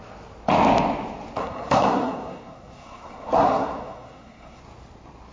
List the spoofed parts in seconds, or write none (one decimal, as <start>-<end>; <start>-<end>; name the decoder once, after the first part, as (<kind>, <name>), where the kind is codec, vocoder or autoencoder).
1.4-4.6 (codec, SNAC)